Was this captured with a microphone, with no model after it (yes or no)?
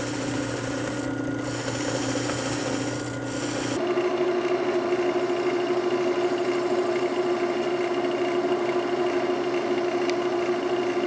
yes